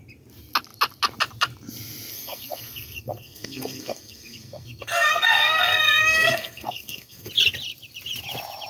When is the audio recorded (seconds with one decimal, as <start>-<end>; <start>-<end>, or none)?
0.0-2.1; 7.3-8.7